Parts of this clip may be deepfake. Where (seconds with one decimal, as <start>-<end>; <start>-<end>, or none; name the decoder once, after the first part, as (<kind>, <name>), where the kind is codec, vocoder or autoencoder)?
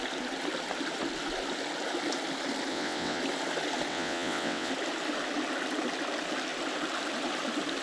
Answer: 2.7-3.2 (vocoder, WaveNeXt); 3.9-4.7